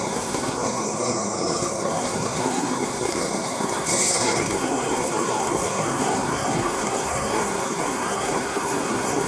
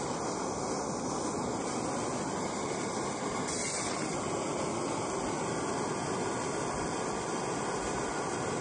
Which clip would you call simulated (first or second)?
first